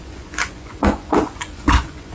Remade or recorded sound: remade